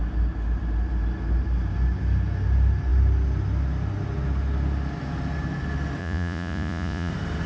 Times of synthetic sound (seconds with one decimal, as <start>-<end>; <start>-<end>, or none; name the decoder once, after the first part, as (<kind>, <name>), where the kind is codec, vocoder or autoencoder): 6.0-7.1 (vocoder, Vocos)